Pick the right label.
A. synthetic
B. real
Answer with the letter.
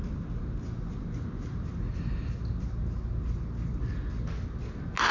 B